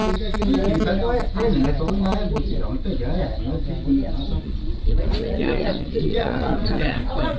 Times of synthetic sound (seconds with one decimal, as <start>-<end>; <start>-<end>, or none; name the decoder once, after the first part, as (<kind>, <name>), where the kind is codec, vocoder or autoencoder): 4.4-7.4 (vocoder, Vocos)